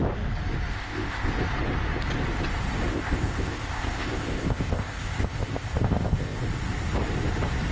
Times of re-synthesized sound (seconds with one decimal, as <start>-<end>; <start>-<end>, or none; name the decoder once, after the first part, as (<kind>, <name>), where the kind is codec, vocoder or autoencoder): 0.7-1.3 (codec, ZipCodec); 2.9-6.4

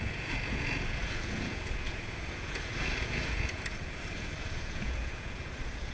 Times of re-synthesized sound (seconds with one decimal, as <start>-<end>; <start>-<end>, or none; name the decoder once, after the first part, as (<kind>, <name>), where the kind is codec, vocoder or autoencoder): 0.0-5.9 (vocoder, Vocos)

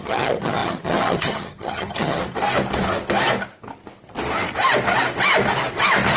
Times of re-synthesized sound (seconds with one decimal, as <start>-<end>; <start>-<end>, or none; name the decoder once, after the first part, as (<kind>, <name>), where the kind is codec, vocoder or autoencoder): 0.0-2.2 (vocoder, HiFi-GAN)

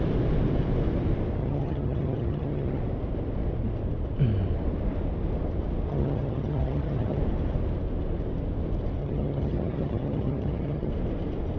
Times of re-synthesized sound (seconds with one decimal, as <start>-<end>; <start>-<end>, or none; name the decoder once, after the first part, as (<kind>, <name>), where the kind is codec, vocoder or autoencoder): 1.4-2.8 (vocoder, HiFi-GAN); 5.9-7.2; 9.0-10.9